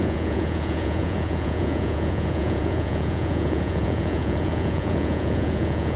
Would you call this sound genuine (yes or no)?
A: no